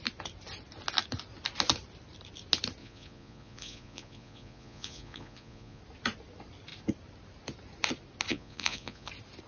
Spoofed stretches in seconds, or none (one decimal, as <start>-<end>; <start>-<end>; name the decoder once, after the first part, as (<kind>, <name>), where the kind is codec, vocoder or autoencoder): 2.8-5.8 (vocoder, Vocos); 8.3-9.1